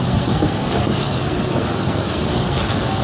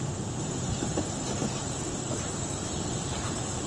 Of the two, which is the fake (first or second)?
first